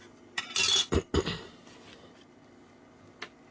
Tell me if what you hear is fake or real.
real